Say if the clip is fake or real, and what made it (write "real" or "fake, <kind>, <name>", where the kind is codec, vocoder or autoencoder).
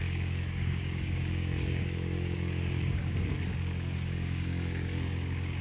fake, codec, DAC